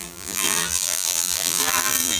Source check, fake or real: fake